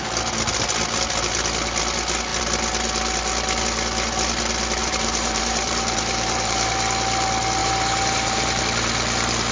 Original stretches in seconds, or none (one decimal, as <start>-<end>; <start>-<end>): 0.0-4.8; 6.7-7.6; 8.6-9.5